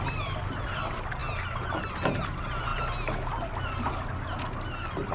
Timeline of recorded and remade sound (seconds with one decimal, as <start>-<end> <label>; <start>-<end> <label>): 0.0-5.1 recorded